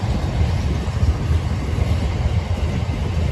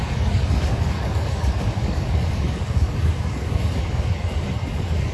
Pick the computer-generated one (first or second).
second